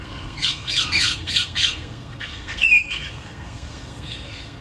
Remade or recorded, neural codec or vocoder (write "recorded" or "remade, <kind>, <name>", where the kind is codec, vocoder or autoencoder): remade, codec, SNAC